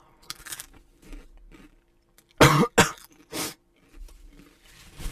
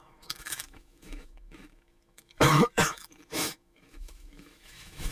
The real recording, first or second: first